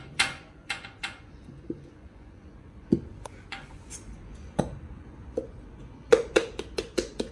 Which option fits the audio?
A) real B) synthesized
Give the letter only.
B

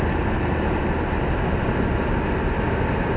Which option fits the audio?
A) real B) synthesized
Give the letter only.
A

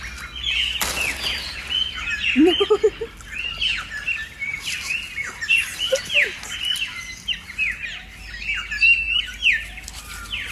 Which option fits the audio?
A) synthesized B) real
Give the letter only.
B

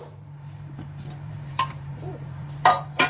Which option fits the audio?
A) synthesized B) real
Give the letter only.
A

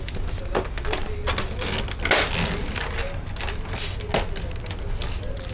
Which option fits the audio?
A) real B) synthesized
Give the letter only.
A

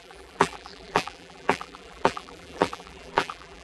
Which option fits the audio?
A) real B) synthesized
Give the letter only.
B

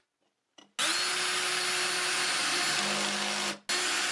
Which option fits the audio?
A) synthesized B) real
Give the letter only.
B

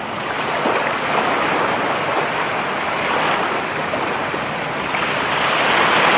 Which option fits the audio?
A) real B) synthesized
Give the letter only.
A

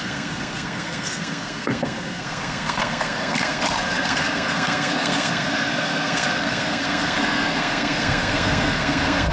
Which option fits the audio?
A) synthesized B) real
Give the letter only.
A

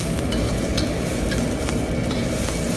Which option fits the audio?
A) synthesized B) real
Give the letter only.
B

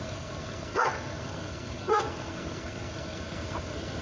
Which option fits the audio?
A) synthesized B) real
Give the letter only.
A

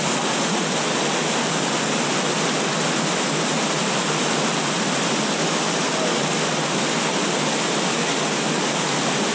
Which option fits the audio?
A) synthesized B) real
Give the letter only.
B